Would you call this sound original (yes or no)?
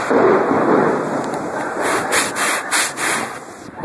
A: yes